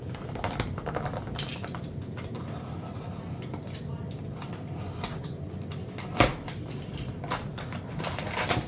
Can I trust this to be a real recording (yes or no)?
no